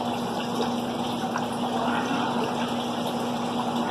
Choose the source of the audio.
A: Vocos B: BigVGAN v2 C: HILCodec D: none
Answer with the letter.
D